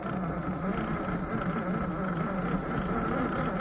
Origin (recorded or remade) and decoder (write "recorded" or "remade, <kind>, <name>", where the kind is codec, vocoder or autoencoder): recorded